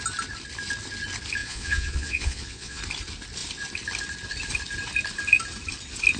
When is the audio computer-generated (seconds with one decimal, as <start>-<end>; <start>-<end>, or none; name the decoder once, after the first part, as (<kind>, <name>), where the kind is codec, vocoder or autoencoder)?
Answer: 1.4-2.8 (vocoder, Vocos)

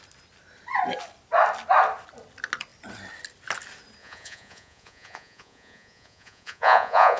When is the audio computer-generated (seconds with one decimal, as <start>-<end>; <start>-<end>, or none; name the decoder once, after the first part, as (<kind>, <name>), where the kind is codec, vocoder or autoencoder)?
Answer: 4.0-7.2 (vocoder, Vocos)

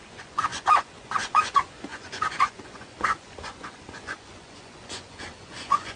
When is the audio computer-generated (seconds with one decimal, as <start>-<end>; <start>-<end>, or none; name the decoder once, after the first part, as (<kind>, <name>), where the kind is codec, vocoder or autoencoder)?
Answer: 0.0-6.0 (vocoder, Vocos)

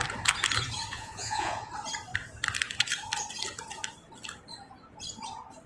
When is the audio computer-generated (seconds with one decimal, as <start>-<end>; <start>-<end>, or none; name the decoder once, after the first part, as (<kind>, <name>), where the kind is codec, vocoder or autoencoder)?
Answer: 0.9-1.7 (vocoder, Vocos)

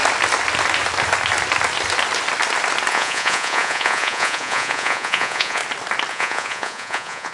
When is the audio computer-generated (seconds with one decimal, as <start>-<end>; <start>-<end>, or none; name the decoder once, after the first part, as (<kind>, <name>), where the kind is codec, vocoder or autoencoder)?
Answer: 2.9-5.6 (vocoder, Vocos); 6.1-7.3

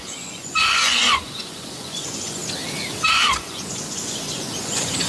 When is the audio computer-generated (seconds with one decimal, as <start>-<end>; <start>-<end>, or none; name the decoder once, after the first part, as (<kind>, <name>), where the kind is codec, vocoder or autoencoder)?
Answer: 0.0-2.4 (vocoder, Vocos); 3.1-5.1